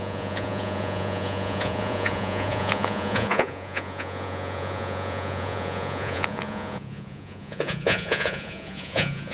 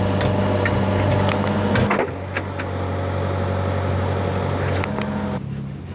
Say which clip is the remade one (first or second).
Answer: first